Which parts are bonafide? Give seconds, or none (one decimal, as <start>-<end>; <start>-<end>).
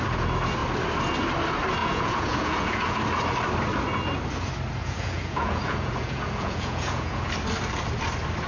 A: 0.0-1.8; 3.0-4.8; 7.3-8.5